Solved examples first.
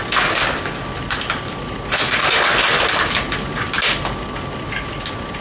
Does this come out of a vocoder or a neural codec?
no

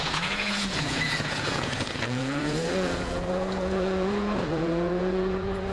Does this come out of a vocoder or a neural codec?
yes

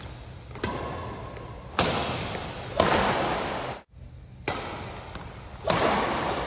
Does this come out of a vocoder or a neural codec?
no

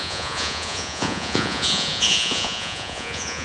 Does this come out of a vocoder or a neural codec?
yes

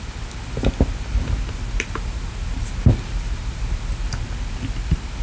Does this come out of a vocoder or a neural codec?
no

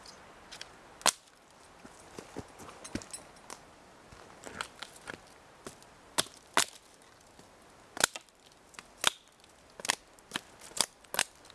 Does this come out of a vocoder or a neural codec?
no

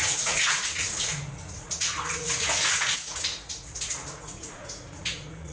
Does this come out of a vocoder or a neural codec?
yes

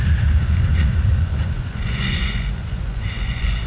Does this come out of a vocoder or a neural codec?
yes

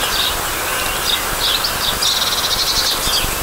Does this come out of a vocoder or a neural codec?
no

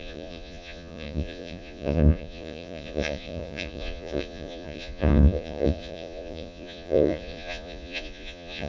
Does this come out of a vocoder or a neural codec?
yes